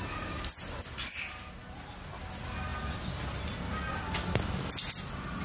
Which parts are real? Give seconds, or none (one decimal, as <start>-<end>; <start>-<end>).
0.0-5.4